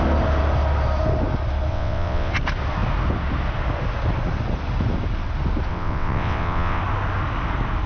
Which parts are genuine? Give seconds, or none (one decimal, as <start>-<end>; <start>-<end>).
0.0-1.7; 2.3-5.7; 6.8-7.9